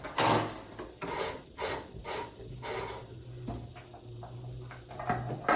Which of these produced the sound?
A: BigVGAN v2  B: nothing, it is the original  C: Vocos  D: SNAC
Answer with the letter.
B